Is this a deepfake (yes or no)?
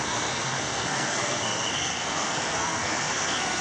yes